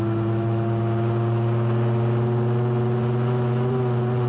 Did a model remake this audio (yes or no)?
no